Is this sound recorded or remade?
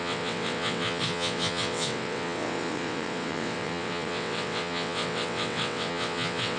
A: remade